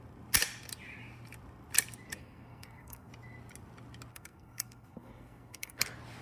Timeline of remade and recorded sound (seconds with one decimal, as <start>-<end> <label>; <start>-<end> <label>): 0.0-2.2 recorded; 2.2-3.1 remade; 3.1-4.1 recorded; 4.1-5.8 remade; 5.8-6.2 recorded